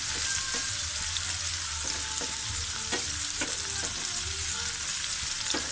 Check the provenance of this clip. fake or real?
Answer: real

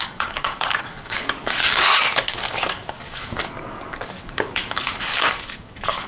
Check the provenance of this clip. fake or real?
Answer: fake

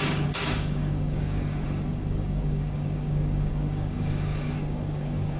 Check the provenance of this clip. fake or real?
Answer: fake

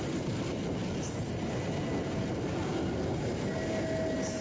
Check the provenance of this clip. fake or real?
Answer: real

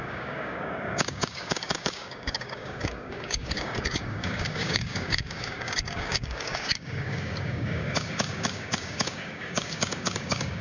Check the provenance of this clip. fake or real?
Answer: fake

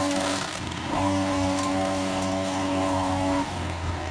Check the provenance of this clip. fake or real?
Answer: fake